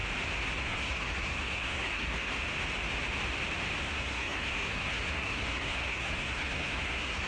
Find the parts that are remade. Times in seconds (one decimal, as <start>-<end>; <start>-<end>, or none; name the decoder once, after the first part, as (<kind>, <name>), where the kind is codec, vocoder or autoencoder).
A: 0.6-2.3 (codec, SNAC); 3.8-7.3